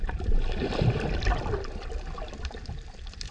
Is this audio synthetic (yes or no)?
no